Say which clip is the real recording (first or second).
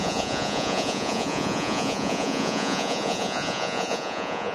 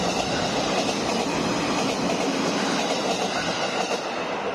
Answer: second